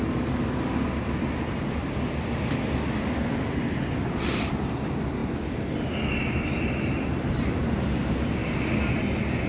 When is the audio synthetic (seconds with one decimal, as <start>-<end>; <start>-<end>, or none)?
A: none